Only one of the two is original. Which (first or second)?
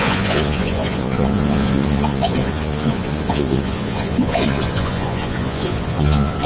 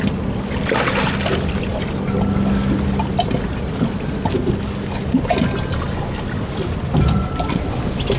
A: second